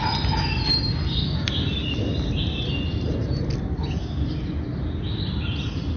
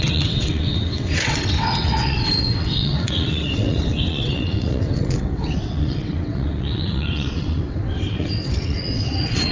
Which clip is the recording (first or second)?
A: first